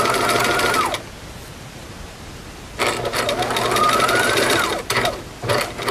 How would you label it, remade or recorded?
recorded